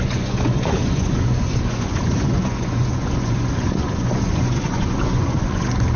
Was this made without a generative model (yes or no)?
no